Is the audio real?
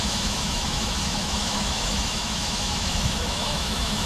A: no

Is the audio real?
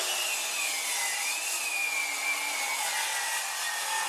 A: yes